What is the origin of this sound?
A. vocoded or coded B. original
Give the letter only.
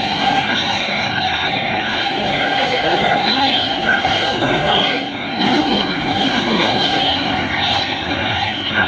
A